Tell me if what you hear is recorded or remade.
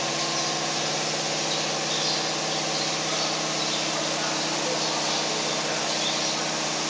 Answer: recorded